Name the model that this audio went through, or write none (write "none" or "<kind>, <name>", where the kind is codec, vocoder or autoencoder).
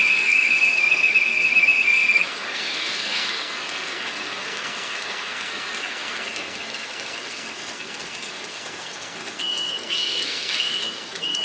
codec, SNAC